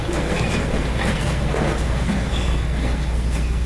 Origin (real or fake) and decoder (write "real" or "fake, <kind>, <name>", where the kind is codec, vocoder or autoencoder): fake, codec, SNAC